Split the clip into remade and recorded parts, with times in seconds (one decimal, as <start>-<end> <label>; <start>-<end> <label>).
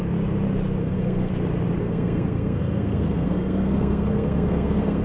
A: 0.0-0.8 recorded; 0.8-1.3 remade; 1.3-1.8 recorded; 1.8-5.0 remade